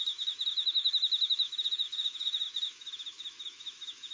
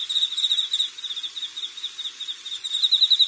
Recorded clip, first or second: second